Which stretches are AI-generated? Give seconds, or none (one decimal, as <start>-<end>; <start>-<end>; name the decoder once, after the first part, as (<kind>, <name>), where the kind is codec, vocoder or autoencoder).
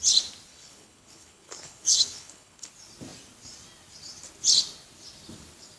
0.5-2.7 (codec, HILCodec)